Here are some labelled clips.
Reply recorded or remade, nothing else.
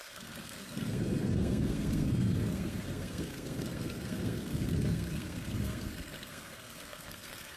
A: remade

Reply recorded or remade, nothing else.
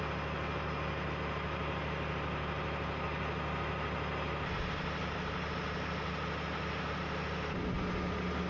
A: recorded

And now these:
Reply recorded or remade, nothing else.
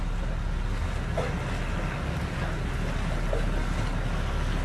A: recorded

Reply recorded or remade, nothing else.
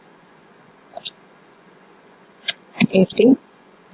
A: remade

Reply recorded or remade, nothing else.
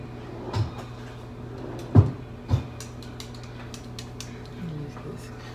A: recorded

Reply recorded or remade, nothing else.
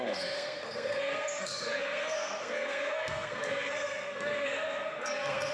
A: remade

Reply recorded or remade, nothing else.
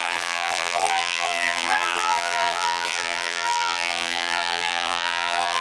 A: remade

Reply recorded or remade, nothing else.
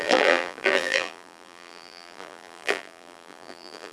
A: remade